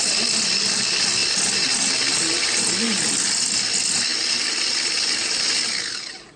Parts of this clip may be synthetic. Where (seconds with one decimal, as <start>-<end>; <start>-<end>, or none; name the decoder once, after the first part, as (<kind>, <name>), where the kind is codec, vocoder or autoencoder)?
none